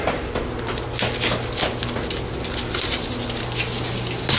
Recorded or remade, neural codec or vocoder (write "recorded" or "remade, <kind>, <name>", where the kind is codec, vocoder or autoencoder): recorded